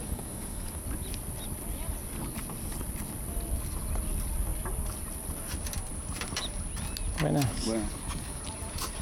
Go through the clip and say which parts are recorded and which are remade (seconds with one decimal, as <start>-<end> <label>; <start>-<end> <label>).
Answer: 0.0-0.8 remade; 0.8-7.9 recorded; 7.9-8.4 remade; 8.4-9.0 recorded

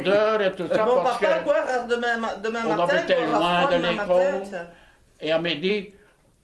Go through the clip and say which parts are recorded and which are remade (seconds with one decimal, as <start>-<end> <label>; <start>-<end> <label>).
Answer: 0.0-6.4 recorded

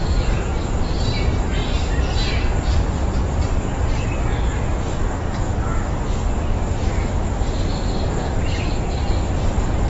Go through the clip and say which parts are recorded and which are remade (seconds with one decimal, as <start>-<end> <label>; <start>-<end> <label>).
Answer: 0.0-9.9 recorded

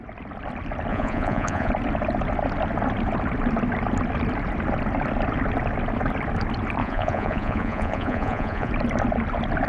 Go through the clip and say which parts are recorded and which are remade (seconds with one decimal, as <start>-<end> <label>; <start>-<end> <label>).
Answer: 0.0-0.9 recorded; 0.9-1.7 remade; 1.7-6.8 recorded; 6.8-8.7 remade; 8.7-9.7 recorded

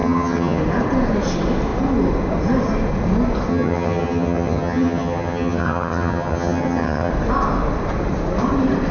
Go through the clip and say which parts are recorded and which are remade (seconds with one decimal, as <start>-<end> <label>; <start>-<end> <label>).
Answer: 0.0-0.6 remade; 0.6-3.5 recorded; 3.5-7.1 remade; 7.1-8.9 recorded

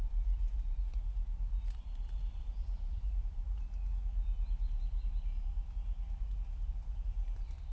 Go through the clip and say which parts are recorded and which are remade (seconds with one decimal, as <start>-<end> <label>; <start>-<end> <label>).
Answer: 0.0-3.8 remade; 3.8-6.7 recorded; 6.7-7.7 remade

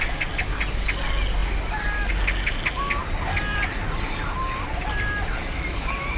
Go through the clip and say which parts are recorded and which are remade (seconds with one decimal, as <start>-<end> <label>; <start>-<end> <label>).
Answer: 0.0-3.0 recorded; 3.0-3.6 remade; 3.6-6.2 recorded

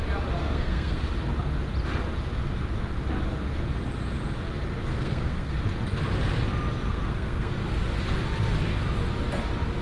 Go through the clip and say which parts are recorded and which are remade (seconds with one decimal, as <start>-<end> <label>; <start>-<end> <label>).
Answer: 0.0-0.4 recorded; 0.4-1.0 remade; 1.0-4.9 recorded; 4.9-5.5 remade; 5.5-6.9 recorded; 6.9-7.5 remade; 7.5-9.8 recorded